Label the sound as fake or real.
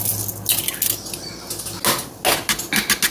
real